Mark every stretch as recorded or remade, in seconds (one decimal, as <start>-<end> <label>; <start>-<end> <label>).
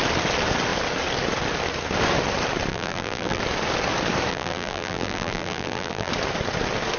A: 0.0-2.7 recorded; 2.7-3.4 remade; 3.4-4.3 recorded; 4.3-6.1 remade; 6.1-7.0 recorded